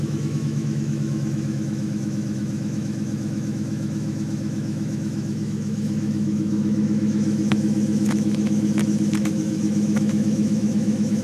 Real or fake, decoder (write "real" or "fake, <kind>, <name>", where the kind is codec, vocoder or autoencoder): fake, autoencoder, DAC-VAE